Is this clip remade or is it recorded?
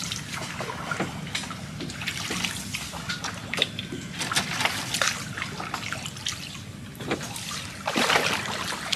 recorded